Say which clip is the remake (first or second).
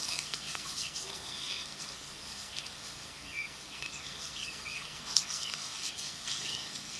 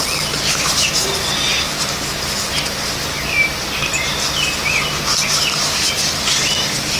first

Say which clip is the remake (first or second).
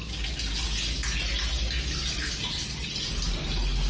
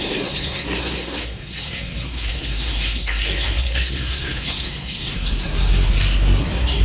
second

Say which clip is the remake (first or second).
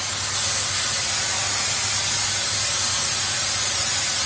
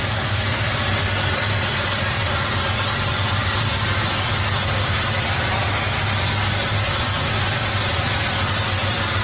second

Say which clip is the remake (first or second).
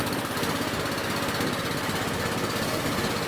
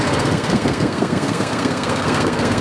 second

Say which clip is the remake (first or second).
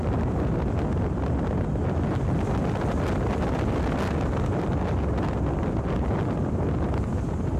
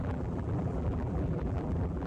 second